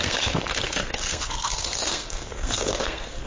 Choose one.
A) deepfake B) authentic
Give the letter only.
A